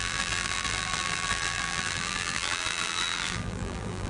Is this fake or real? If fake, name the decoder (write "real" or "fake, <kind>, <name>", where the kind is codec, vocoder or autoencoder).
fake, vocoder, BigVGAN v2